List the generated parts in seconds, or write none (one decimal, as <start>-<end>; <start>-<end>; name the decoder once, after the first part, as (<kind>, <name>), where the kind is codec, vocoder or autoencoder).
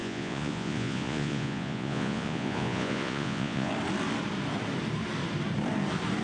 0.0-3.7 (vocoder, Vocos)